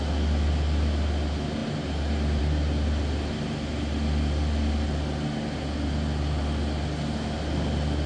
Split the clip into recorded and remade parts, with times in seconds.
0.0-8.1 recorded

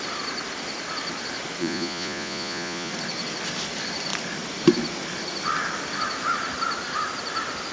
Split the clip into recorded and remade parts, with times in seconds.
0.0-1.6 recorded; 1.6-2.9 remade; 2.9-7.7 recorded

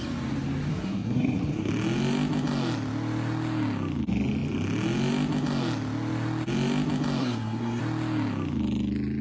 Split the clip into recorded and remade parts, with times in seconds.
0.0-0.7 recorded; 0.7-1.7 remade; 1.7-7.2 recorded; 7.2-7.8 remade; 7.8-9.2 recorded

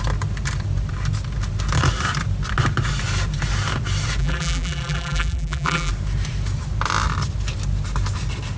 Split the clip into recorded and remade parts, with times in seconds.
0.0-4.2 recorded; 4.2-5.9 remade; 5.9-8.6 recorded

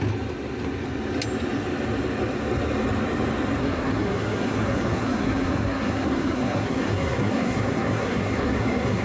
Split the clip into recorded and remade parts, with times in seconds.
0.0-3.6 recorded; 3.6-9.0 remade

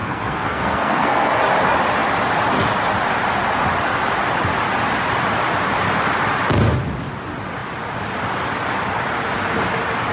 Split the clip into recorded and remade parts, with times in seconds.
0.0-1.3 remade; 1.3-10.1 recorded